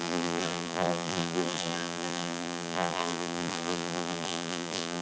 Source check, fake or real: fake